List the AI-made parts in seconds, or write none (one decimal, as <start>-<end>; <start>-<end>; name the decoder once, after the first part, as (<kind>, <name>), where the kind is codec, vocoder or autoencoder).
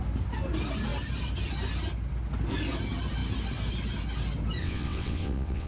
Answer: 4.6-5.7 (vocoder, WaveNeXt)